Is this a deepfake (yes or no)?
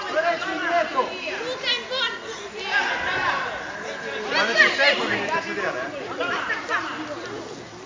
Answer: no